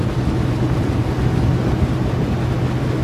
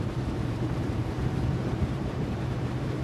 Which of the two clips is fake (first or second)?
second